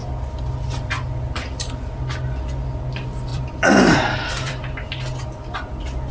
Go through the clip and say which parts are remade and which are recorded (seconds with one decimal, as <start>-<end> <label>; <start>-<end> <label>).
0.0-3.3 recorded; 3.3-4.7 remade; 4.7-6.1 recorded